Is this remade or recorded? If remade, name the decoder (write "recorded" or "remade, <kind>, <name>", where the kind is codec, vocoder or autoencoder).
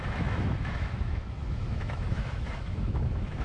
remade, autoencoder, DAC-VAE